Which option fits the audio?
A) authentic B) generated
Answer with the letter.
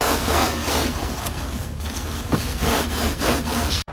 B